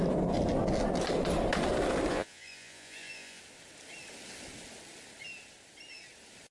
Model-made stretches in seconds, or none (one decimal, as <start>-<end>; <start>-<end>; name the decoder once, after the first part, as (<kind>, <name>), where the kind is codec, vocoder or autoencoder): 2.1-3.4 (vocoder, Vocos)

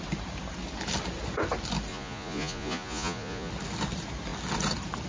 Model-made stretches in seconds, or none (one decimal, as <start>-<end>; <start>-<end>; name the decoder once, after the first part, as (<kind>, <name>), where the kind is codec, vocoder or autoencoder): 1.9-3.5 (vocoder, Vocos)

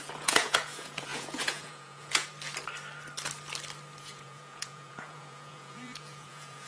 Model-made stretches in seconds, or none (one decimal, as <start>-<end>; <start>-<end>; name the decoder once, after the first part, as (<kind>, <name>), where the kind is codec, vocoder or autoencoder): 0.0-2.3 (vocoder, Vocos); 4.0-6.7